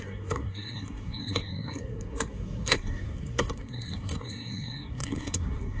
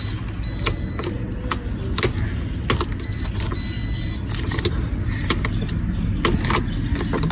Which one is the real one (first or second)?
second